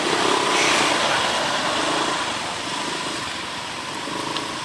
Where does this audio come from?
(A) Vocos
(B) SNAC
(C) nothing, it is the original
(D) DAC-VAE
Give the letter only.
C